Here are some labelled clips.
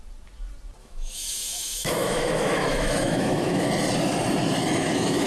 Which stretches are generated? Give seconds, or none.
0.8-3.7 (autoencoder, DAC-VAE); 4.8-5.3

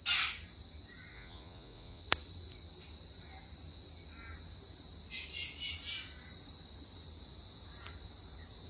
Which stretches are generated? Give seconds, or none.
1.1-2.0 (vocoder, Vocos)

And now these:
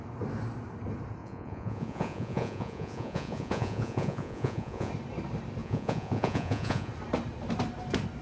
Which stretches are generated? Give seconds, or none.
1.2-4.9 (vocoder, Vocos); 5.6-6.9

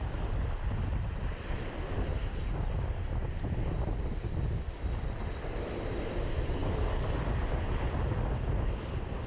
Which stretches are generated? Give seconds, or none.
none

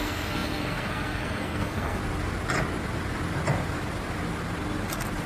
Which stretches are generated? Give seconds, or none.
0.0-2.0 (codec, SNAC)